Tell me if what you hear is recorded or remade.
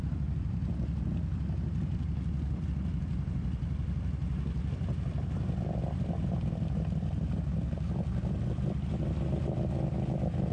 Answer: recorded